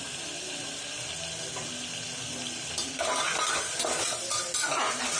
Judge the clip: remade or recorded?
recorded